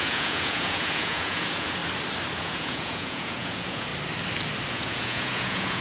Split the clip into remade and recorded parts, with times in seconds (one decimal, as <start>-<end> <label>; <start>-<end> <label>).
0.0-1.8 remade; 1.8-2.4 recorded; 2.4-3.9 remade; 3.9-4.7 recorded; 4.7-5.8 remade